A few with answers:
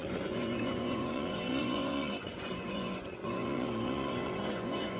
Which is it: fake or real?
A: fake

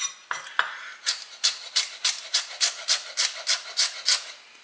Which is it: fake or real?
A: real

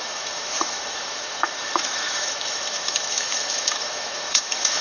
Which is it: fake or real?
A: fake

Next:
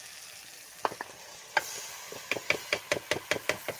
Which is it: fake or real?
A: real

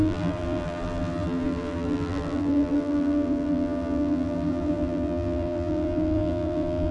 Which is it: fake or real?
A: fake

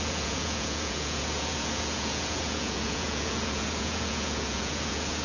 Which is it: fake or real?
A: fake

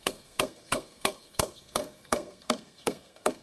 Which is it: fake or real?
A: fake